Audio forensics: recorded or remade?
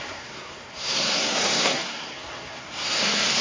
remade